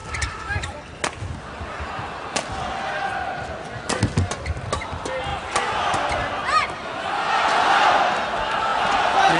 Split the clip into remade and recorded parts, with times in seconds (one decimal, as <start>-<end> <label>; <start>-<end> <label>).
0.0-9.4 recorded